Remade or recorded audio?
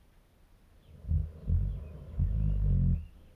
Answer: recorded